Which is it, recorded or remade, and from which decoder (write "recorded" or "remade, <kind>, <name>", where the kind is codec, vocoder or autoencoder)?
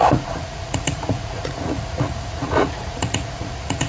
remade, vocoder, Vocos